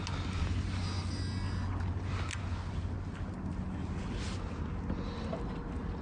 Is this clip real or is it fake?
real